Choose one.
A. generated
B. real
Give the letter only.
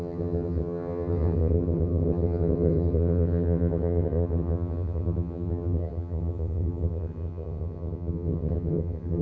A